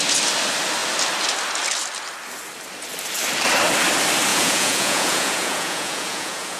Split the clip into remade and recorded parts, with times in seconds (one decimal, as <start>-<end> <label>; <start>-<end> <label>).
0.0-4.3 recorded; 4.3-6.6 remade